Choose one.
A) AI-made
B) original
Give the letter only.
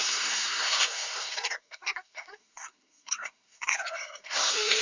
A